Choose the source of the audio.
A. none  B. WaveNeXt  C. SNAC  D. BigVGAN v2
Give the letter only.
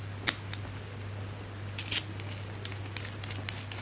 A